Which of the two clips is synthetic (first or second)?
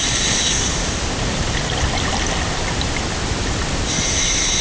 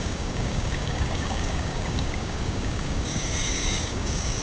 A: second